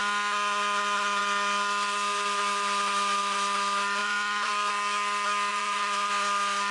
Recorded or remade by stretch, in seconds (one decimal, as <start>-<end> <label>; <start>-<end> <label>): 0.0-4.0 recorded; 4.0-4.5 remade; 4.5-5.5 recorded; 5.5-6.1 remade; 6.1-6.7 recorded